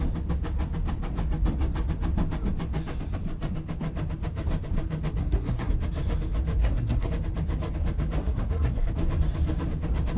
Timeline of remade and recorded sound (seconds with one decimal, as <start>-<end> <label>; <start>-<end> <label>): 0.0-5.2 recorded; 5.2-5.7 remade; 5.7-6.6 recorded; 6.6-7.1 remade; 7.1-8.2 recorded; 8.2-8.9 remade; 8.9-10.2 recorded